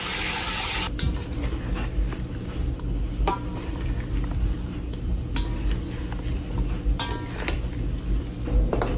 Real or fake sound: real